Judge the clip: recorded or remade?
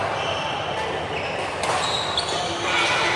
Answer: recorded